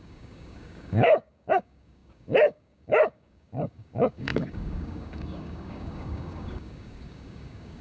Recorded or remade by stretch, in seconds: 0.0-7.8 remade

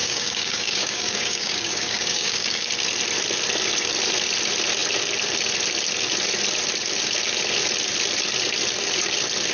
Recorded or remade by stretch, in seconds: 0.0-2.7 remade; 2.7-9.5 recorded

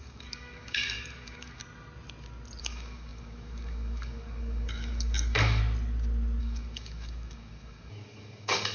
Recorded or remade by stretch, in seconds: 0.0-1.6 remade; 1.6-2.6 recorded; 2.6-5.6 remade; 5.6-6.4 recorded; 6.4-8.7 remade

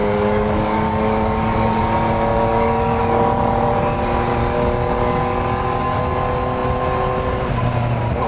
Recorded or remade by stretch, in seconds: 0.0-1.8 remade; 1.8-2.3 recorded; 2.3-3.0 remade; 3.0-4.4 recorded; 4.4-6.0 remade; 6.0-8.3 recorded

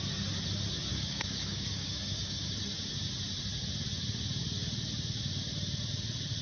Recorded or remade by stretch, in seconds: 0.0-0.9 recorded; 0.9-2.5 remade; 2.5-6.4 recorded

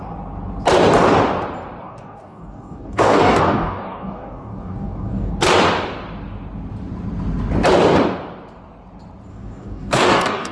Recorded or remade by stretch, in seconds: 0.0-1.8 recorded; 1.8-5.3 remade; 5.3-9.3 recorded; 9.3-10.5 remade

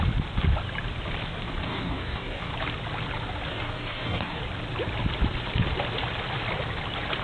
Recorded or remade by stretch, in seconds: 0.0-1.6 recorded; 1.6-2.5 remade; 2.5-3.5 recorded; 3.5-4.4 remade; 4.4-7.2 recorded